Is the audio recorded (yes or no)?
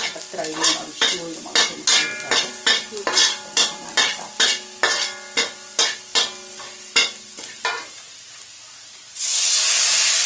yes